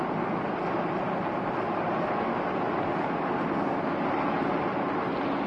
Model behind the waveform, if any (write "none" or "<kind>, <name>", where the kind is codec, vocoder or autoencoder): none